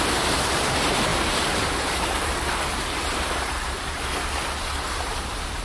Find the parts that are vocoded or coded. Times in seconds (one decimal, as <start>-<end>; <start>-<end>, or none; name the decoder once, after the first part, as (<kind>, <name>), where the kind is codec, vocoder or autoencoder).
0.0-5.6 (vocoder, BigVGAN v2)